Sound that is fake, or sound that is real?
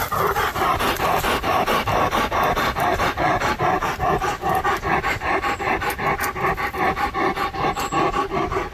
real